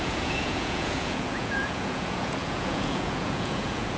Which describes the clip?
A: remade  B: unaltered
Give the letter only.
A